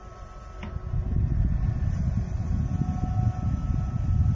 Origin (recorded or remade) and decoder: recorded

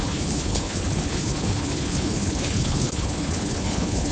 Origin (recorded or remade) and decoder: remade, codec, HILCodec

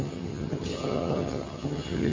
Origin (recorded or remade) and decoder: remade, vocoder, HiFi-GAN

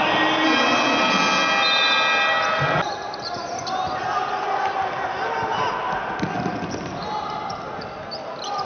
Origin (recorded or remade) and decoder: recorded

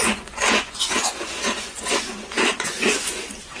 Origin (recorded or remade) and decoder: remade, vocoder, Vocos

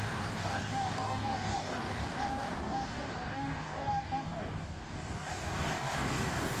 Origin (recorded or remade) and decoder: remade, codec, DAC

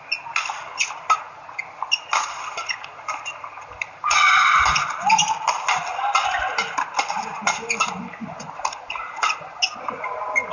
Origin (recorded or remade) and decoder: recorded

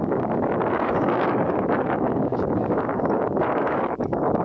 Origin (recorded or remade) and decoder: remade, codec, DAC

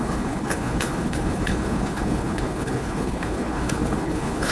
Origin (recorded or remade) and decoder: remade, codec, HILCodec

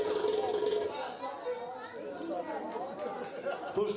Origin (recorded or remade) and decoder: recorded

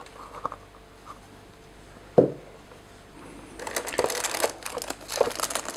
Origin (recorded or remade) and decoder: recorded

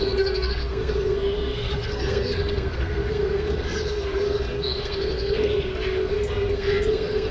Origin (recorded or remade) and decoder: remade, codec, SNAC